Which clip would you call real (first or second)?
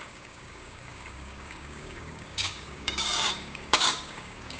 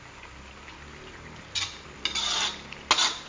second